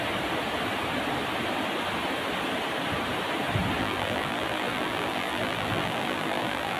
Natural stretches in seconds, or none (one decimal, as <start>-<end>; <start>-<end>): 0.0-3.8